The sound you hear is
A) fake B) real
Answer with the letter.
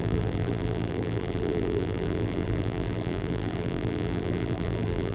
A